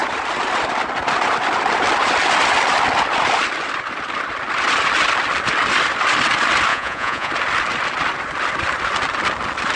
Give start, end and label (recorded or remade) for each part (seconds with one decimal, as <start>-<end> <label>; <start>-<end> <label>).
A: 0.0-6.7 recorded; 6.7-7.3 remade; 7.3-9.8 recorded